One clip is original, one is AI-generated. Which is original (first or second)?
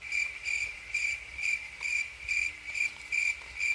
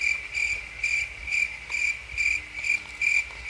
second